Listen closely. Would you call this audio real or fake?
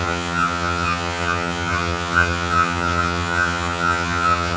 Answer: fake